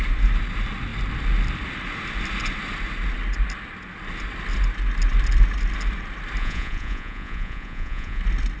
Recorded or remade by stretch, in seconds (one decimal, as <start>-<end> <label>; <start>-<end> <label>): 0.0-6.4 recorded; 6.4-8.2 remade; 8.2-8.6 recorded